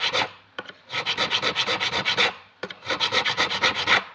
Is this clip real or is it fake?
fake